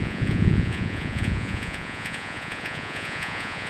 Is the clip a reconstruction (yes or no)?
yes